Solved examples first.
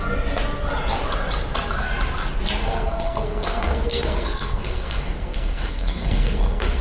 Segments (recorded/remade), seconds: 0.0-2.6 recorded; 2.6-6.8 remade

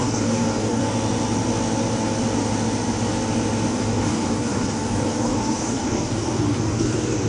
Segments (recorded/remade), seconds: 0.0-0.8 remade; 0.8-3.7 recorded; 3.7-7.3 remade

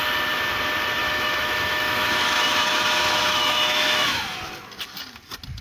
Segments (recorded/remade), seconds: 0.0-1.0 recorded; 1.0-4.4 remade; 4.4-5.6 recorded

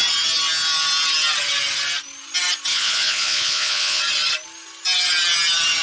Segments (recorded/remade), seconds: 0.0-2.7 recorded; 2.7-4.0 remade; 4.0-5.8 recorded

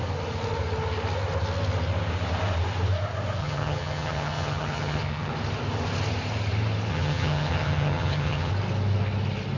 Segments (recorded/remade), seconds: 0.0-3.4 recorded; 3.4-5.3 remade; 5.3-6.9 recorded; 6.9-8.5 remade; 8.5-9.6 recorded

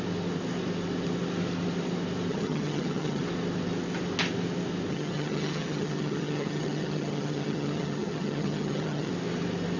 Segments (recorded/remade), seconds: 0.0-2.3 recorded; 2.3-3.2 remade; 3.2-4.9 recorded; 4.9-9.1 remade; 9.1-9.8 recorded

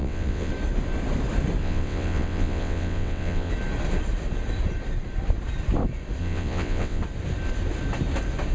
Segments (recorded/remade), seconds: 0.0-0.5 remade; 0.5-1.6 recorded; 1.6-3.5 remade; 3.5-6.2 recorded; 6.2-7.0 remade; 7.0-8.5 recorded